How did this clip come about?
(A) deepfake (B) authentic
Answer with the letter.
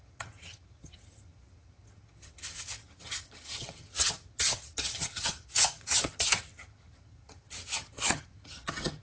A